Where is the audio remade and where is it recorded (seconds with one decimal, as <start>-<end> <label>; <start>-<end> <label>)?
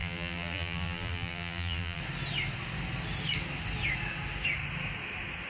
0.0-2.0 remade; 2.0-5.5 recorded